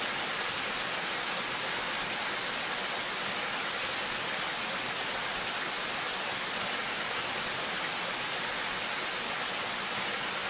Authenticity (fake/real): real